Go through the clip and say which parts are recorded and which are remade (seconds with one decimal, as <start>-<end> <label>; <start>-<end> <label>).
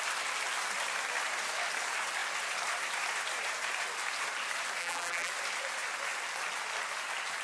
0.0-4.8 recorded; 4.8-5.3 remade; 5.3-7.4 recorded